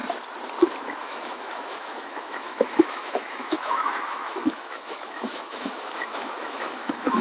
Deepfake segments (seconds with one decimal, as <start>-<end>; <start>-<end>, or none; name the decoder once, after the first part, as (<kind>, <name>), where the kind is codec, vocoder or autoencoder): 1.0-7.2 (autoencoder, DAC-VAE)